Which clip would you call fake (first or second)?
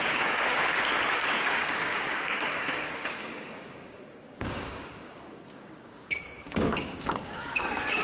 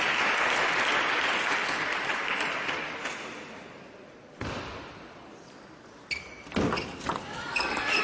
first